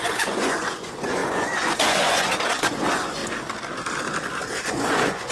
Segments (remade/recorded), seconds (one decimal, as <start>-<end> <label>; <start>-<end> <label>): 0.0-3.2 remade; 3.2-4.5 recorded; 4.5-5.3 remade